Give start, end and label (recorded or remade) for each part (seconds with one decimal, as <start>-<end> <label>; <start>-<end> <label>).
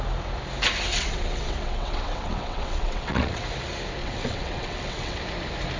0.0-0.9 recorded; 0.9-3.4 remade; 3.4-4.0 recorded; 4.0-5.2 remade; 5.2-5.8 recorded